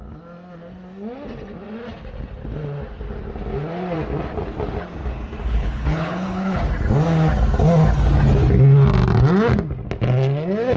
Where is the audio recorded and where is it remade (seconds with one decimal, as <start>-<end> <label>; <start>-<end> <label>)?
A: 0.0-5.4 recorded; 5.4-6.6 remade; 6.6-10.8 recorded